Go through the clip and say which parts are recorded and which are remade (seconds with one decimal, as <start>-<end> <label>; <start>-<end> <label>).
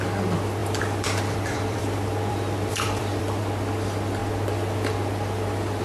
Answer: 0.0-0.6 recorded; 0.6-3.4 remade; 3.4-5.8 recorded